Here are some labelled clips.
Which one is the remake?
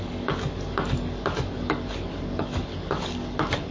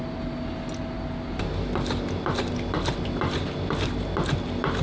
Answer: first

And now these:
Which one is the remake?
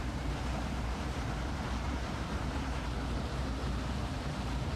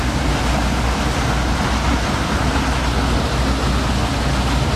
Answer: first